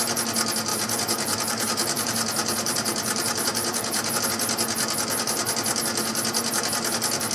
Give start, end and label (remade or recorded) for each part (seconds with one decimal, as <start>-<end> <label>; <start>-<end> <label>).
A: 0.0-0.7 recorded; 0.7-4.2 remade; 4.2-7.3 recorded